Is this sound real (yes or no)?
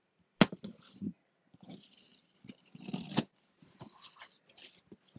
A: yes